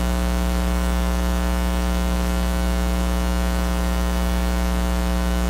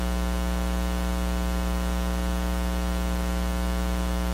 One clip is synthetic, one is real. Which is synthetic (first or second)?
first